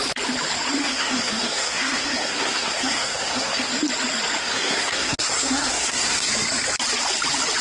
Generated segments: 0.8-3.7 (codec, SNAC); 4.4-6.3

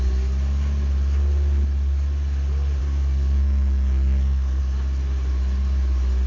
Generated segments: 2.8-4.6 (codec, SNAC)

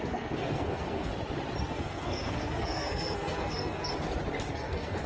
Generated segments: 0.0-1.1 (codec, SNAC); 1.6-3.9; 4.5-5.1